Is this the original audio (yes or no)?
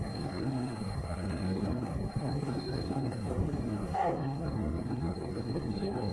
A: no